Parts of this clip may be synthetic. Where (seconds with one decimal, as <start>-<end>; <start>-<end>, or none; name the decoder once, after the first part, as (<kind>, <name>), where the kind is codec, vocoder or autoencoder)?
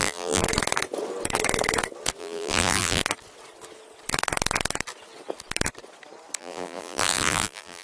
0.0-0.4 (vocoder, BigVGAN v2); 2.2-3.0; 6.4-7.8